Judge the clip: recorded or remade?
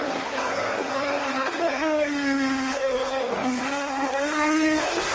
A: remade